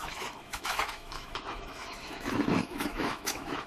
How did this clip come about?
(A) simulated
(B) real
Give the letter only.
A